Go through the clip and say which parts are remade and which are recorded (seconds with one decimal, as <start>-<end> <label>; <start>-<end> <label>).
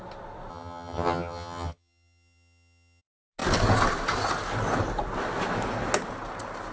0.0-0.5 recorded; 0.5-3.0 remade; 3.0-6.7 recorded